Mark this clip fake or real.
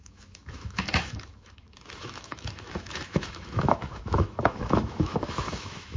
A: fake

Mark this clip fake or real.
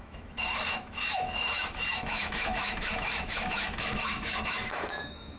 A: fake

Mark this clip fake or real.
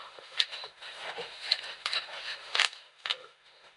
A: fake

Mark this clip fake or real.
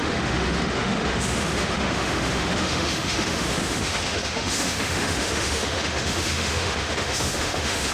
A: fake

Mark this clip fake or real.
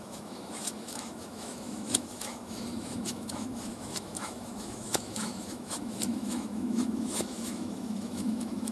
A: fake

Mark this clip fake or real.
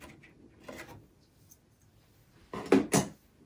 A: real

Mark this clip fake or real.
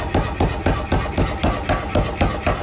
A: real